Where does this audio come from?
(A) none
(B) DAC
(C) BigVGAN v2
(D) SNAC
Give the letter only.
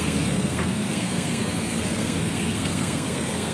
D